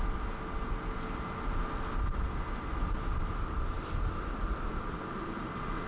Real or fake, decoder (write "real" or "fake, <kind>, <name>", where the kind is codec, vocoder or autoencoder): real